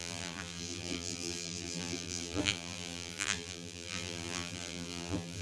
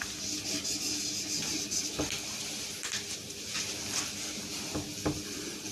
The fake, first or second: first